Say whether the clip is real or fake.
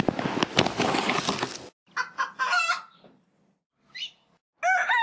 real